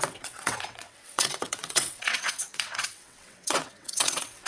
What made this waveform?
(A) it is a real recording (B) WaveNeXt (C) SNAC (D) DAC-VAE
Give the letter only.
B